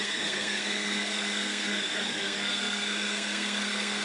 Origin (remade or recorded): remade